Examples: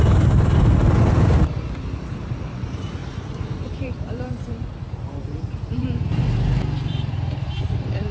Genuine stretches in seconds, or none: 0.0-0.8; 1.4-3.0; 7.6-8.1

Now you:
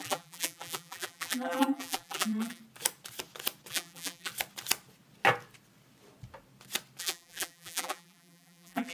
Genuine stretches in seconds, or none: 2.6-3.7; 4.3-7.0

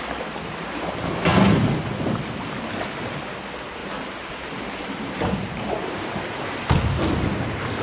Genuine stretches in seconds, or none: 0.0-3.8; 5.7-7.8

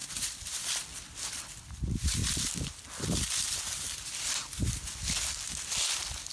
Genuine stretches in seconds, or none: 0.0-1.6; 2.2-6.3

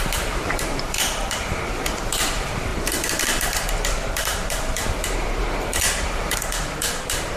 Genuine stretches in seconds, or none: none

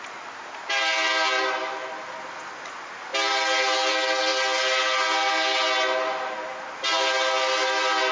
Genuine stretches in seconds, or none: 0.0-8.1

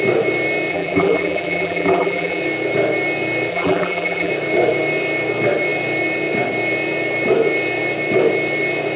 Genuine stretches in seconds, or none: 0.0-0.7; 2.4-3.5; 4.3-9.0

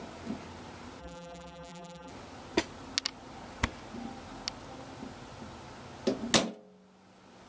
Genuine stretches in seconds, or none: 0.0-1.0; 2.1-7.5